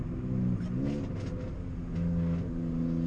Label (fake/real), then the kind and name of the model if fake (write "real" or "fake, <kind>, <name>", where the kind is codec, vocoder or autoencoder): real